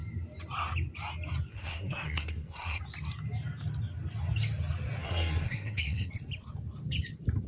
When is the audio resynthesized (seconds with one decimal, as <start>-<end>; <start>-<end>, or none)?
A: 1.5-2.8; 5.0-6.1